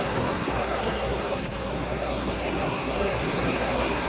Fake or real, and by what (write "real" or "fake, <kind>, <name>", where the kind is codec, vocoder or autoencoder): fake, codec, SNAC